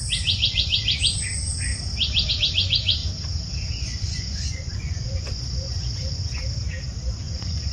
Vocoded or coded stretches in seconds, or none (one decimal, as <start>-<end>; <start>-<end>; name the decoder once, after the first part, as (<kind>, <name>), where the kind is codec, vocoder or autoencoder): 0.0-1.7 (vocoder, Vocos); 2.3-3.0; 3.7-6.2; 7.2-7.7

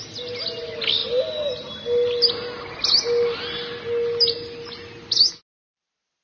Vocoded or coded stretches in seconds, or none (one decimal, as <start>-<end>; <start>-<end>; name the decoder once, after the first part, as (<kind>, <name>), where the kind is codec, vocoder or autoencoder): none